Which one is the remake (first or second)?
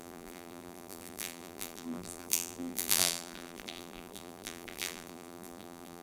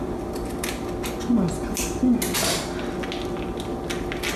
first